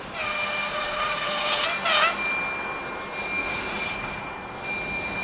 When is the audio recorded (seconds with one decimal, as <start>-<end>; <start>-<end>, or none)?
0.0-0.7; 1.3-3.4; 4.3-5.2